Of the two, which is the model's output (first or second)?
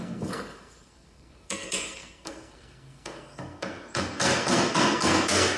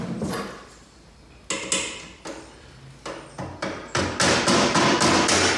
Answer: first